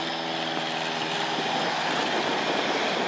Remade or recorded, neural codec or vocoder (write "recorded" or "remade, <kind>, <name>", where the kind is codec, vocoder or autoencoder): recorded